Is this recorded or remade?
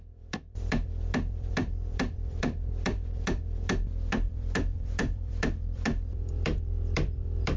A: remade